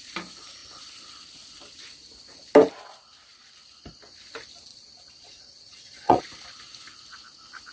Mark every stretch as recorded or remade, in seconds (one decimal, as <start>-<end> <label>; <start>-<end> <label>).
0.0-4.7 recorded; 4.7-6.2 remade; 6.2-7.7 recorded